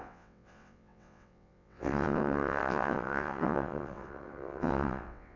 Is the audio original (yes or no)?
no